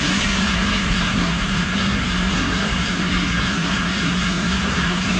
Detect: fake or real fake